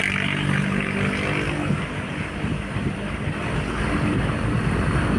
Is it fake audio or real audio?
real